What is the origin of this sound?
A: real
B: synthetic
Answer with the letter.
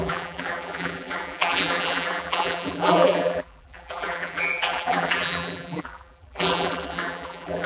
B